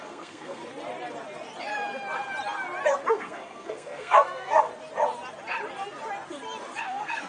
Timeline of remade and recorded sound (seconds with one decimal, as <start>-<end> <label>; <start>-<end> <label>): 0.0-0.6 remade; 0.6-3.1 recorded; 3.1-4.7 remade; 4.7-6.8 recorded; 6.8-7.3 remade